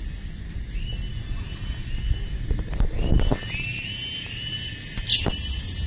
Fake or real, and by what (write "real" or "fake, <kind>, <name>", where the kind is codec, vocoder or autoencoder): real